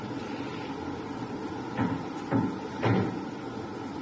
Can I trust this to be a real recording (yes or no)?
yes